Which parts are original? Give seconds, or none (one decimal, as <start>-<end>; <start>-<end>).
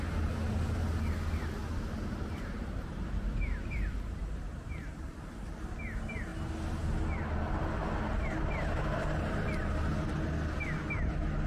0.0-1.6; 5.2-11.5